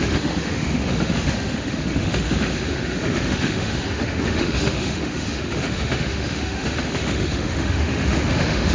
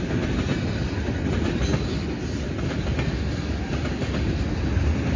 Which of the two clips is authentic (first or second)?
second